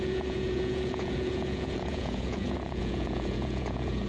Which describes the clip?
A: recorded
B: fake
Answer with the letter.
B